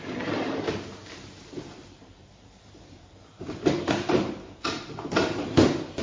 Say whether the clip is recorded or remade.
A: remade